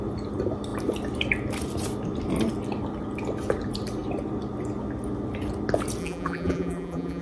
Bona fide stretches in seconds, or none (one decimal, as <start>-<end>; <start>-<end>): 0.0-6.0